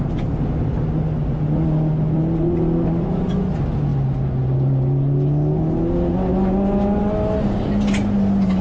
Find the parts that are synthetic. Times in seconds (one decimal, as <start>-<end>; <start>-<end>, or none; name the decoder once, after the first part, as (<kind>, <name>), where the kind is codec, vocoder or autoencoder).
none